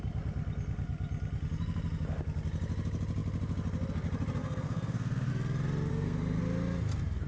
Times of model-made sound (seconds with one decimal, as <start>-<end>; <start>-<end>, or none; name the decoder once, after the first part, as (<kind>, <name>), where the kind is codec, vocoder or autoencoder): 4.4-5.3 (codec, SNAC); 5.9-6.4